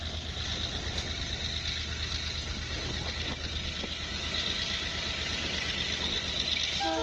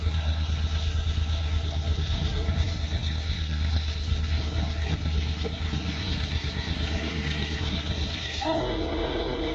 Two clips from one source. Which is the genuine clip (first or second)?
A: first